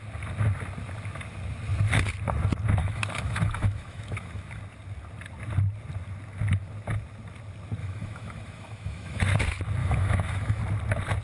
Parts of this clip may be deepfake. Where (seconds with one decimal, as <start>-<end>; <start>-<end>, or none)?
2.8-4.6; 7.8-9.2; 9.8-10.6